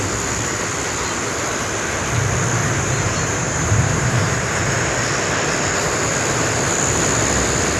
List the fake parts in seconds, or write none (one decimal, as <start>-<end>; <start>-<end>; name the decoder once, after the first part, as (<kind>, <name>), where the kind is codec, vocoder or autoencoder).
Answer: 2.6-4.9 (vocoder, BigVGAN v2)